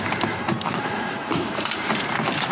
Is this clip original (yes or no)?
no